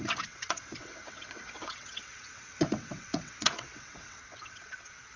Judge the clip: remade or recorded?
remade